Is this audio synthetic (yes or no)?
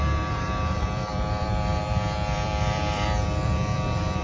yes